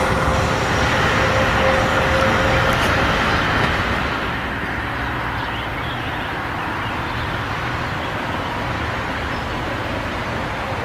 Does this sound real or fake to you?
real